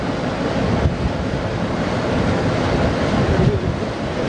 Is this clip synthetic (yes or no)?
yes